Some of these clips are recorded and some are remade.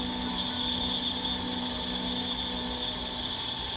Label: recorded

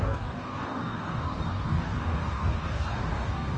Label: remade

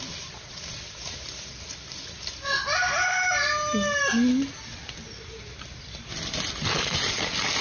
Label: recorded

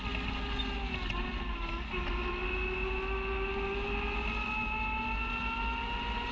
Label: recorded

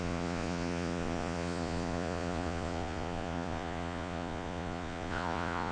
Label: remade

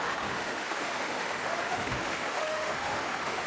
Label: remade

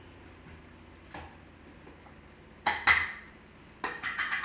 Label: recorded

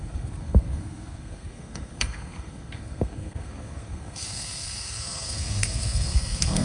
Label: remade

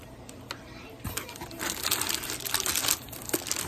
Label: recorded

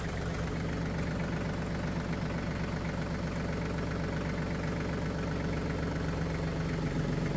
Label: recorded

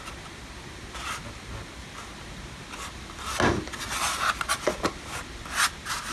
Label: recorded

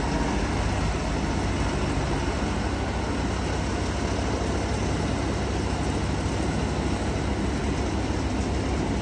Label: recorded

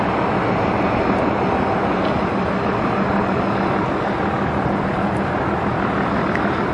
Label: recorded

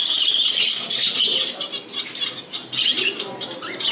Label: recorded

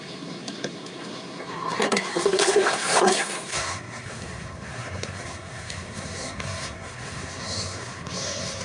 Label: remade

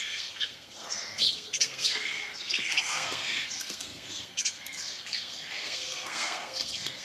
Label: remade